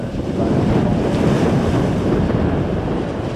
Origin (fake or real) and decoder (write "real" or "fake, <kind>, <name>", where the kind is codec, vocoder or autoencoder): real